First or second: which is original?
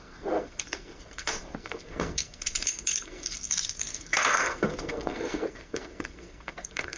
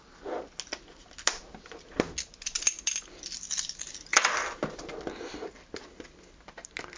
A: second